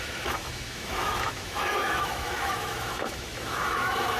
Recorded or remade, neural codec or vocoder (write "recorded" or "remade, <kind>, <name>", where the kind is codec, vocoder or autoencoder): remade, autoencoder, DAC-VAE